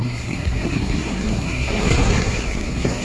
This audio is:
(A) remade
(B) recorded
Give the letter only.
A